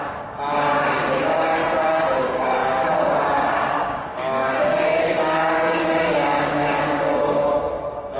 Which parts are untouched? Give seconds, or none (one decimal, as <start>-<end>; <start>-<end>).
1.6-2.2